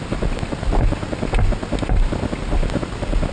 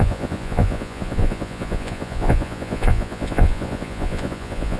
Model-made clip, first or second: second